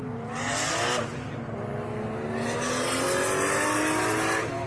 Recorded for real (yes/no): yes